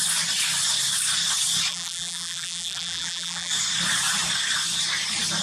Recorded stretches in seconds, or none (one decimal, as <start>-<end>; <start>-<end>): 0.0-1.7; 3.5-5.4